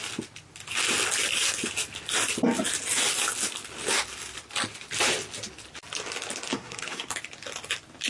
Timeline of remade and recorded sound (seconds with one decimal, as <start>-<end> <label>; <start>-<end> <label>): 0.0-6.5 recorded; 6.5-7.1 remade; 7.1-8.1 recorded

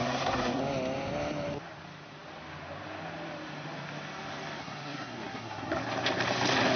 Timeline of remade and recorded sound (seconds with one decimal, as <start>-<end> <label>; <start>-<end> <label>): 0.0-0.6 remade; 0.6-4.6 recorded; 4.6-5.8 remade; 5.8-6.8 recorded

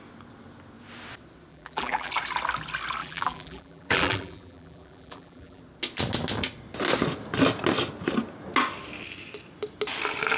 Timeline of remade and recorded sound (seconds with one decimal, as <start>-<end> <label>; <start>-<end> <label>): 0.0-1.5 recorded; 1.5-2.1 remade; 2.1-3.0 recorded; 3.0-5.6 remade; 5.6-10.4 recorded

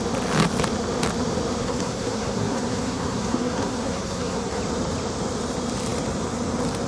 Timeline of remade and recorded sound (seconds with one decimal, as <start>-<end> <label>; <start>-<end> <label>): 0.0-1.6 recorded; 1.6-4.6 remade; 4.6-6.9 recorded

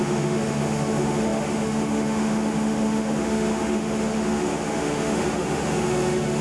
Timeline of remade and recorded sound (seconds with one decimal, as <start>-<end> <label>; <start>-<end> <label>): 0.0-6.4 remade

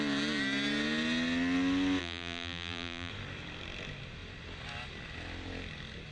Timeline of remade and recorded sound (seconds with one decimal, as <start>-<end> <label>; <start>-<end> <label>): 0.0-2.0 recorded; 2.0-3.1 remade; 3.1-6.1 recorded